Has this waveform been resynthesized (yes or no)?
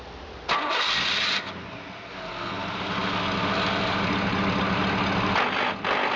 no